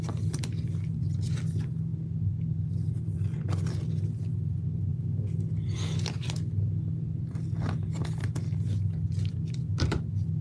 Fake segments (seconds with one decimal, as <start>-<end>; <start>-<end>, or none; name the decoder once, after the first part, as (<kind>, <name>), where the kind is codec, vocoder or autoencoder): none